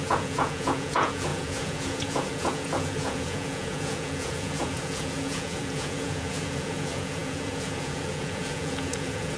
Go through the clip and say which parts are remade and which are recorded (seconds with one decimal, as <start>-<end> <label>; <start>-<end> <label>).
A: 0.0-9.4 remade

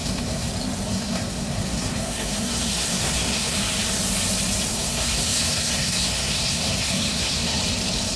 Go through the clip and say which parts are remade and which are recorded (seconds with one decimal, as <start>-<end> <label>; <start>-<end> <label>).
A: 0.0-0.5 remade; 0.5-0.9 recorded; 0.9-3.6 remade; 3.6-4.7 recorded; 4.7-7.6 remade; 7.6-8.2 recorded

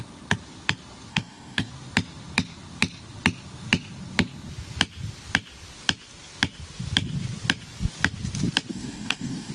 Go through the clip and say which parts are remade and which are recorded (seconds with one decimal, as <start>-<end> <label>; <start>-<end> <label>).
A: 0.0-1.1 recorded; 1.1-1.7 remade; 1.7-8.7 recorded; 8.7-9.5 remade

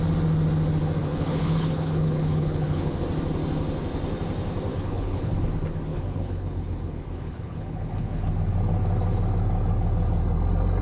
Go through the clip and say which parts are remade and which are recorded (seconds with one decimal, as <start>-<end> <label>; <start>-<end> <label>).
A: 0.0-1.0 recorded; 1.0-3.0 remade; 3.0-4.7 recorded; 4.7-5.3 remade; 5.3-5.9 recorded; 5.9-8.3 remade; 8.3-10.8 recorded

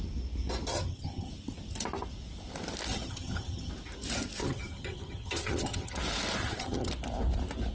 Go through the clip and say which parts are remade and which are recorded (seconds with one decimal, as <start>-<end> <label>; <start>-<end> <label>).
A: 0.0-0.7 recorded; 0.7-1.3 remade; 1.3-2.9 recorded; 2.9-3.7 remade; 3.7-4.4 recorded; 4.4-6.0 remade; 6.0-6.4 recorded; 6.4-6.9 remade; 6.9-7.7 recorded

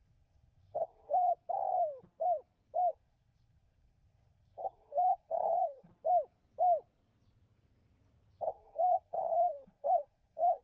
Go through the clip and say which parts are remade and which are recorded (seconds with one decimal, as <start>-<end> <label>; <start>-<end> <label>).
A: 0.0-1.3 remade; 1.3-2.9 recorded; 2.9-5.9 remade; 5.9-8.4 recorded; 8.4-10.6 remade

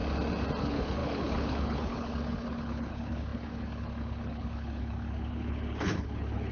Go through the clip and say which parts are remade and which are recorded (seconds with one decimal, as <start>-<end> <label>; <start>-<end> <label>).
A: 0.0-0.6 recorded; 0.6-6.5 remade